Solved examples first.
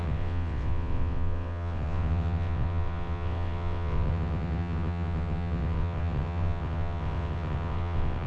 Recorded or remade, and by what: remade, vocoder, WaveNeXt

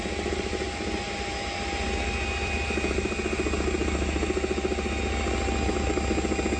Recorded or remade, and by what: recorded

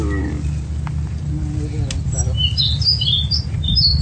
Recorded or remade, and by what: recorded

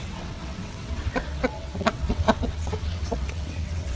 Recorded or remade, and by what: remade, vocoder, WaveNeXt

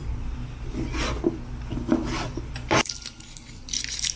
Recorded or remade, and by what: recorded